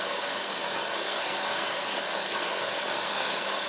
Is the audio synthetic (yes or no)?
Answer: yes